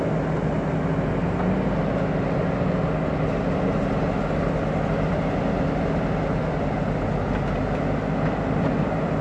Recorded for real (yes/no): yes